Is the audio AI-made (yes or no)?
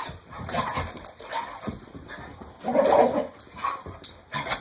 no